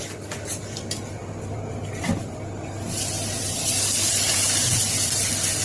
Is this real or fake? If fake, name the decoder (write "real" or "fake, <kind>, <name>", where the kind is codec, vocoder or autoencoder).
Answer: fake, vocoder, BigVGAN v2